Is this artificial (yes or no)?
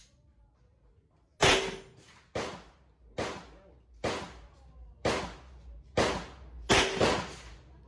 no